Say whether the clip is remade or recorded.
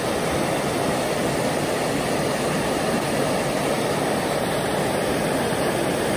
recorded